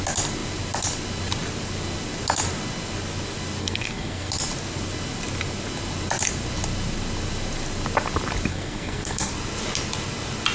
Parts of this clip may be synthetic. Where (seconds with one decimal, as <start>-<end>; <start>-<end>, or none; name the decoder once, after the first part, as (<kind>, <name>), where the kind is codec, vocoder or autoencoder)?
3.6-4.3 (codec, SNAC); 8.5-9.3